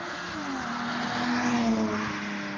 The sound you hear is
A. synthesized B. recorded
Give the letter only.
B